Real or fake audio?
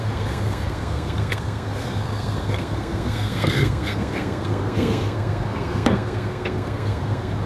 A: fake